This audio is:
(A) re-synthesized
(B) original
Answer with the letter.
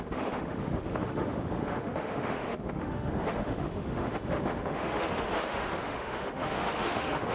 A